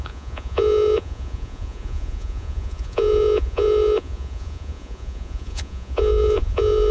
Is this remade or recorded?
remade